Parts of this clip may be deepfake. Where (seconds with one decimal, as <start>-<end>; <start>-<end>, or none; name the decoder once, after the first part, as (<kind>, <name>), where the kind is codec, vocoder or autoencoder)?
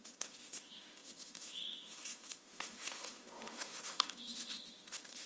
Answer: 0.0-5.3 (autoencoder, DAC-VAE)